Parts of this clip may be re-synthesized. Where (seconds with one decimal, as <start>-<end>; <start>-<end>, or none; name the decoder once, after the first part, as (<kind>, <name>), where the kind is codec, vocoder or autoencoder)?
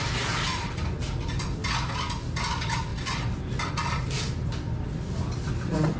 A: none